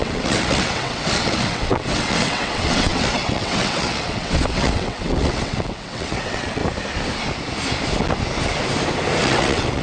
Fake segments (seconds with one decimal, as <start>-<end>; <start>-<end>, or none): 0.0-6.6; 9.2-9.8